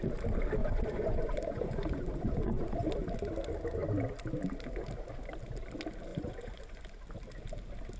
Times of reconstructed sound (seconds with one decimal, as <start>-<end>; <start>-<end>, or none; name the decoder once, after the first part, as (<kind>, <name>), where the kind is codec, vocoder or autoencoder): 0.6-2.9 (vocoder, Vocos); 6.1-6.8

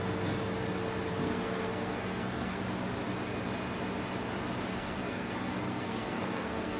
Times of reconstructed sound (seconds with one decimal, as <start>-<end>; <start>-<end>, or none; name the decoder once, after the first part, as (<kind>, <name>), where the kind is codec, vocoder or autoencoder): 1.1-2.6 (codec, SNAC); 4.7-6.8

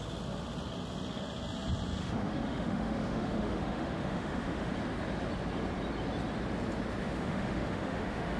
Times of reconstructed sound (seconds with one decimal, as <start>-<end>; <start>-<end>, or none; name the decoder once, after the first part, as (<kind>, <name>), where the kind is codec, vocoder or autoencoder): 2.0-4.7 (autoencoder, DAC-VAE); 7.0-8.4

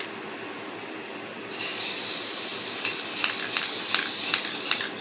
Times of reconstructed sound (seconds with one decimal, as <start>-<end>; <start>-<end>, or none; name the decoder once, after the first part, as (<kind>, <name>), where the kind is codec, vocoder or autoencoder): none

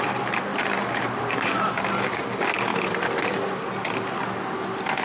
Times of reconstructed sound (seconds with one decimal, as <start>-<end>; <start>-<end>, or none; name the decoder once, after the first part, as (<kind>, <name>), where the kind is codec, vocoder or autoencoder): 0.5-1.9 (vocoder, BigVGAN v2); 2.7-3.2